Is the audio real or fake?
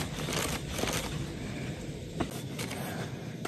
real